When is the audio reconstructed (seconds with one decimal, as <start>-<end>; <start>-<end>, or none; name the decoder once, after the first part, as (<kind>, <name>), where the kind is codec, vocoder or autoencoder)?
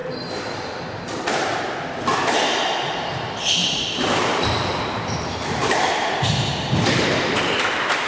3.6-8.1 (vocoder, BigVGAN v2)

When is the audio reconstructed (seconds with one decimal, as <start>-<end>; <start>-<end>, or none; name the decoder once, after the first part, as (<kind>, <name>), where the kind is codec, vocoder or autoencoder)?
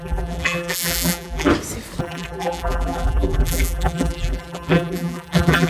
0.0-1.5 (vocoder, BigVGAN v2); 2.0-5.7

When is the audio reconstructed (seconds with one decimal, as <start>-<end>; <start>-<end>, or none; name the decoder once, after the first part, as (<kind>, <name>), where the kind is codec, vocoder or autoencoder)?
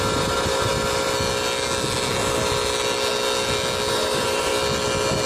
0.0-0.7 (vocoder, BigVGAN v2); 3.9-4.5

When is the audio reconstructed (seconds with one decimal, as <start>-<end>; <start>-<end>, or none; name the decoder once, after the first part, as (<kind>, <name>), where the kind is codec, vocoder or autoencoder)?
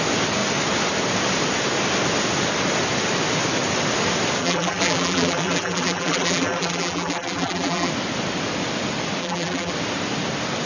4.4-7.9 (vocoder, BigVGAN v2); 9.2-9.7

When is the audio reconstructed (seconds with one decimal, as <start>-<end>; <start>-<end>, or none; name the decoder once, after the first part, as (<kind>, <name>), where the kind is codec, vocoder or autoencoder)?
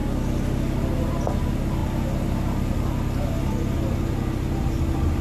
none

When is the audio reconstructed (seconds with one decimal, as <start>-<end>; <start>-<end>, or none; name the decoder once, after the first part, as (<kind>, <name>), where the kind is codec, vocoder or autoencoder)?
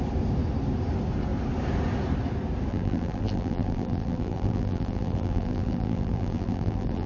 2.7-7.1 (vocoder, BigVGAN v2)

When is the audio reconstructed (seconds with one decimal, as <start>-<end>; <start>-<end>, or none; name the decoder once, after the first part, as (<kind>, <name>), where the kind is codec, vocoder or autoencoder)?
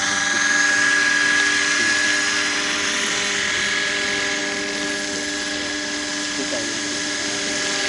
none